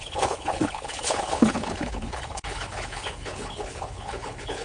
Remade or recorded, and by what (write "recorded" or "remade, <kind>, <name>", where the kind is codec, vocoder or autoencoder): remade, codec, HILCodec